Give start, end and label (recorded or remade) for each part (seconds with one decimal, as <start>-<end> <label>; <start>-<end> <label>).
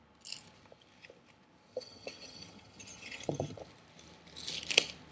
0.0-1.7 recorded; 1.7-3.6 remade; 3.6-5.1 recorded